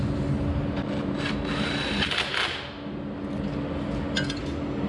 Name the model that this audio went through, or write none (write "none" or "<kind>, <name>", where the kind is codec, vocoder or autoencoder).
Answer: none